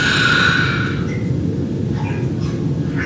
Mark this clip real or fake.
real